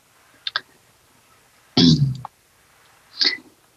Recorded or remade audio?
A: recorded